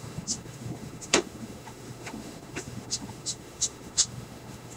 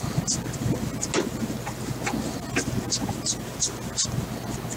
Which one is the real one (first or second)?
second